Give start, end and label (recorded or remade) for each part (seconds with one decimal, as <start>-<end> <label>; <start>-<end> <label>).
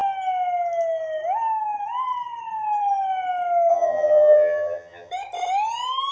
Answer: 0.0-3.7 recorded; 3.7-5.1 remade; 5.1-6.1 recorded